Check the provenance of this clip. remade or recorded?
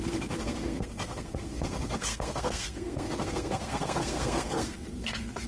remade